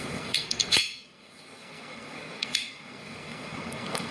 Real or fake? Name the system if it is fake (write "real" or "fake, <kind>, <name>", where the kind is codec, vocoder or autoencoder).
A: fake, codec, SNAC